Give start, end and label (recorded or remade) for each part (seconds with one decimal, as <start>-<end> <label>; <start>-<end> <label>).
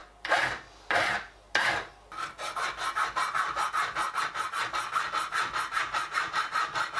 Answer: 0.0-7.0 recorded